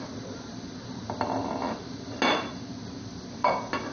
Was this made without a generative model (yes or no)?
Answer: yes